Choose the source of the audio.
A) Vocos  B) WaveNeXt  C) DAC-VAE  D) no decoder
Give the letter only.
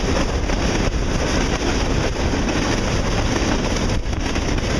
D